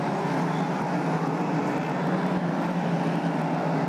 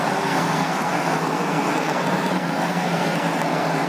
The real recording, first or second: first